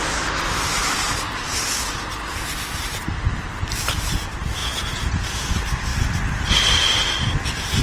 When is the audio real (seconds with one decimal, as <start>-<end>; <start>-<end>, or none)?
0.0-4.6; 5.5-7.8